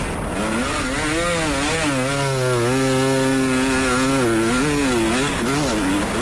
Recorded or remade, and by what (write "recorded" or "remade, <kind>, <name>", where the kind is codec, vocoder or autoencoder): recorded